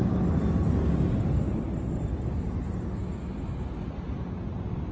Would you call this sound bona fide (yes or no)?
yes